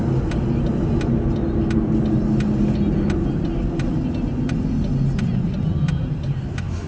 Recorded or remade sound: recorded